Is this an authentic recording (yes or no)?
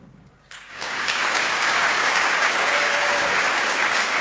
no